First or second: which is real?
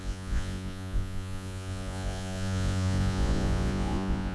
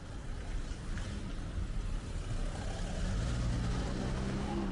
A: second